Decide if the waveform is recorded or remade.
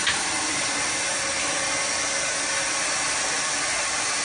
recorded